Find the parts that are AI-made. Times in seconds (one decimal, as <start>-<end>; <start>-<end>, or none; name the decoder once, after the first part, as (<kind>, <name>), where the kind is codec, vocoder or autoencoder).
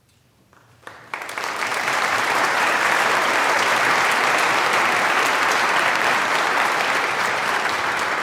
0.0-8.2 (vocoder, BigVGAN v2)